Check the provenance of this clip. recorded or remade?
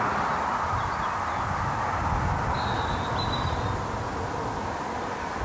recorded